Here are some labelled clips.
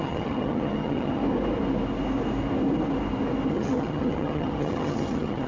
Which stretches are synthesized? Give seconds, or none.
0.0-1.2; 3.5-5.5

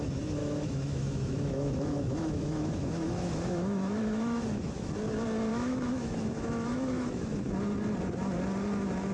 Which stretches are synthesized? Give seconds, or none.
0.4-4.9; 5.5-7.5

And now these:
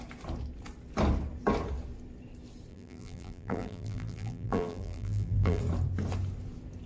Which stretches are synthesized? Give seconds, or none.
2.7-5.6

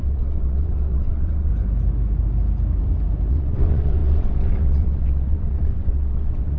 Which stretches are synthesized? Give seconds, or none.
0.0-1.5; 3.3-6.6

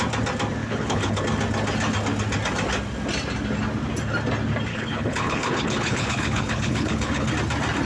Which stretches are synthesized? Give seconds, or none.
0.6-1.2; 4.7-7.3

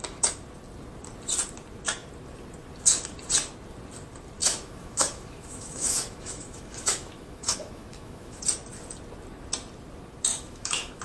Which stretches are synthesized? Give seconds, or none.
4.4-8.4; 10.3-11.0